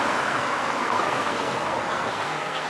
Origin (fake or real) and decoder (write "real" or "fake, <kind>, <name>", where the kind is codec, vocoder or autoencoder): fake, codec, SNAC